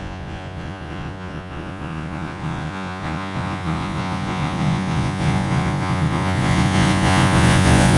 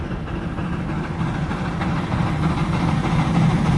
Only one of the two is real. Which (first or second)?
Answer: second